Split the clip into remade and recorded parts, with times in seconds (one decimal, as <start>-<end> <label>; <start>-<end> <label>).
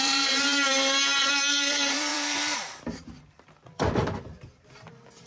0.0-0.7 remade; 0.7-1.2 recorded; 1.2-5.3 remade